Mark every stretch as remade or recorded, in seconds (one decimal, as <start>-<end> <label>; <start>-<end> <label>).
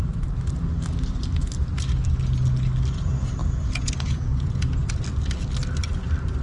0.0-3.4 recorded; 3.4-4.9 remade; 4.9-6.4 recorded